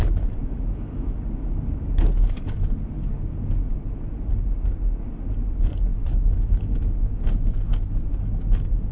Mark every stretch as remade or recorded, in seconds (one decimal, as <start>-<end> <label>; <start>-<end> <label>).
0.0-0.4 recorded; 0.4-1.2 remade; 1.2-5.9 recorded; 5.9-7.3 remade; 7.3-8.9 recorded